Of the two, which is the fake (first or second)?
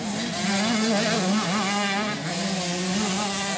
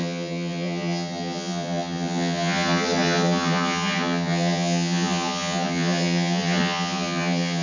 second